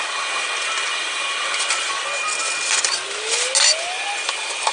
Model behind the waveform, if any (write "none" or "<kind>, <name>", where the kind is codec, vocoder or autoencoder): none